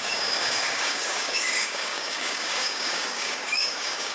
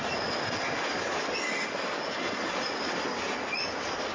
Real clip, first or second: second